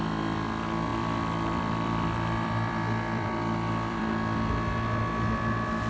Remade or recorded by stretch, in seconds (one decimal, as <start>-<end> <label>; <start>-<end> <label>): 0.0-0.9 recorded; 0.9-4.0 remade; 4.0-5.9 recorded